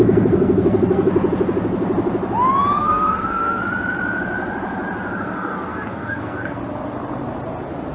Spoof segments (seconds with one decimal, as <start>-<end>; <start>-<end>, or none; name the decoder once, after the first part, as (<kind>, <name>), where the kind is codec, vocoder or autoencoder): 0.0-1.1 (codec, SNAC); 2.8-3.6; 5.2-6.6